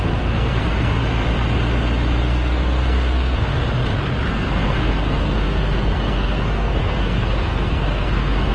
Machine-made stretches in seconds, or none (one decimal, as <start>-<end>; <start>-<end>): 0.0-1.0; 2.2-3.5; 4.3-8.5